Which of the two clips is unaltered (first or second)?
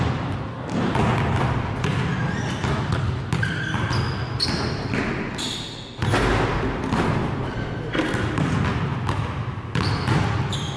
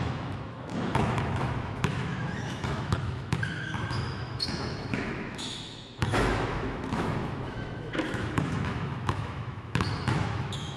first